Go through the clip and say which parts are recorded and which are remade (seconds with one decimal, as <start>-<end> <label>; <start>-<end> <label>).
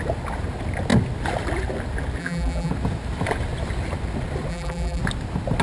0.0-2.2 recorded; 2.2-2.7 remade; 2.7-4.5 recorded; 4.5-5.0 remade; 5.0-5.6 recorded